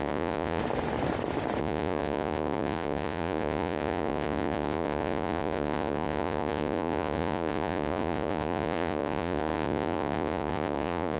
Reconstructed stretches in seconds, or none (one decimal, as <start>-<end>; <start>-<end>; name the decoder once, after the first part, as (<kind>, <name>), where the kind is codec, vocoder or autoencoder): 0.0-0.6 (vocoder, Vocos); 1.6-11.2